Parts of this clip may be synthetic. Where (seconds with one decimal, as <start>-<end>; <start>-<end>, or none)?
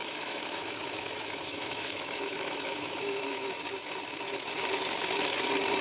0.0-3.5